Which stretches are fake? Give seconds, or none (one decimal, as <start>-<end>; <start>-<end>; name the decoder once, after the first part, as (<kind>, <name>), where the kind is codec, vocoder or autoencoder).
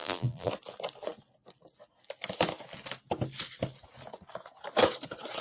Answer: 0.0-0.5 (vocoder, BigVGAN v2)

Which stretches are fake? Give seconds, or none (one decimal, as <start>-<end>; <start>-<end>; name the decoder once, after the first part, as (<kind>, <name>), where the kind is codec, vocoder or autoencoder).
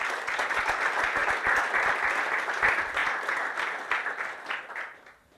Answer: none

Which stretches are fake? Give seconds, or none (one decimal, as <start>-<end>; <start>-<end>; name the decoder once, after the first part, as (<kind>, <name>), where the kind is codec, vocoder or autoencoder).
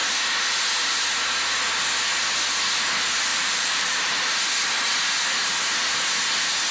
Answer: 3.3-4.1 (vocoder, BigVGAN v2)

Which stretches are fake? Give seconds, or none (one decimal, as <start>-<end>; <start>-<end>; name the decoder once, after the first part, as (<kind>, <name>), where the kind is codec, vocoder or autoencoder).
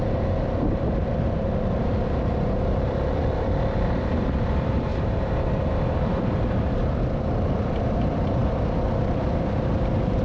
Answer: 0.0-4.9 (vocoder, BigVGAN v2); 5.7-10.2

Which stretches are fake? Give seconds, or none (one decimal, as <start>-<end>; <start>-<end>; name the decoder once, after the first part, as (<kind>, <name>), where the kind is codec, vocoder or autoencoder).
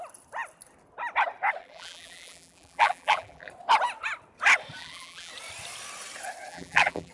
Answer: 1.6-3.5 (vocoder, BigVGAN v2); 4.8-5.3; 6.5-7.1